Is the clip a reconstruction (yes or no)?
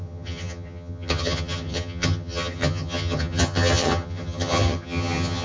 yes